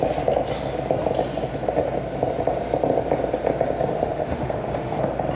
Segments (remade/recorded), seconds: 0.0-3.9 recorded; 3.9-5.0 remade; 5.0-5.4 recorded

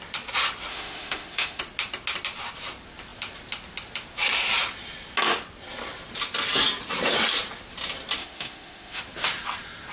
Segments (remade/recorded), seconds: 0.0-0.7 recorded; 0.7-1.6 remade; 1.6-8.2 recorded; 8.2-9.0 remade; 9.0-9.9 recorded

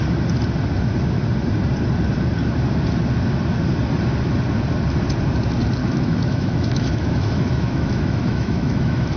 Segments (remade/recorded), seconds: 0.0-5.8 recorded; 5.8-9.2 remade